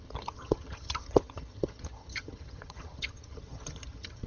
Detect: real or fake fake